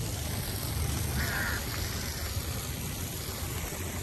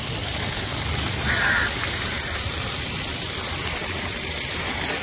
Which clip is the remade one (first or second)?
second